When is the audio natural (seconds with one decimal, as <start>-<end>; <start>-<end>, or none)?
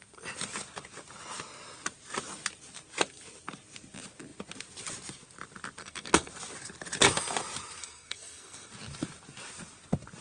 0.0-5.8; 6.3-7.8; 8.7-10.2